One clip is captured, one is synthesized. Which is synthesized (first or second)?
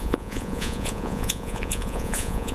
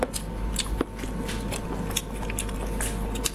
first